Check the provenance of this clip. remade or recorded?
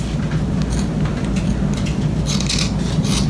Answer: recorded